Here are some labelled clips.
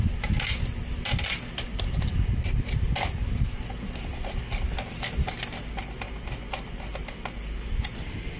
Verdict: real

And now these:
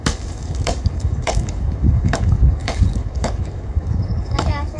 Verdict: fake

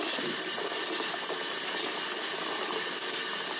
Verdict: real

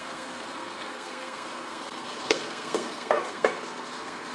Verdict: fake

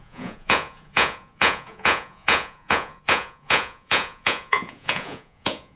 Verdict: fake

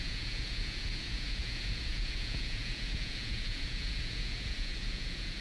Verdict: fake